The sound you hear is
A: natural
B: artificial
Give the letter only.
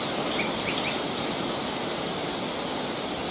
A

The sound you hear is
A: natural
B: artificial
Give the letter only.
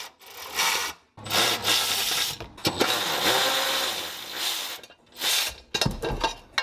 A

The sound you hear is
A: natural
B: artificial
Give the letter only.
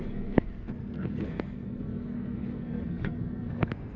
B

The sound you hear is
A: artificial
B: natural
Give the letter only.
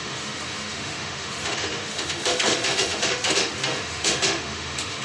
A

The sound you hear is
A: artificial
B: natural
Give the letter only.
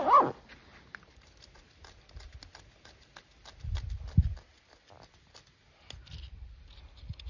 B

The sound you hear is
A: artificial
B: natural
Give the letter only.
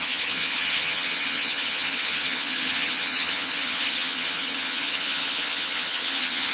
A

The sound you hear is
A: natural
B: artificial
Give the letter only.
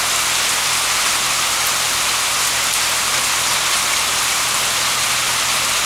A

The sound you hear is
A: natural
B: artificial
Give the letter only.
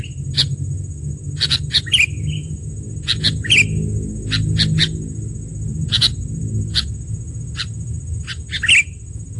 A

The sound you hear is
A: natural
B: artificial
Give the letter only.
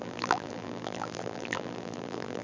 B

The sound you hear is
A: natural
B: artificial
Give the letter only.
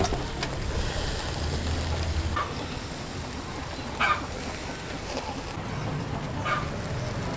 A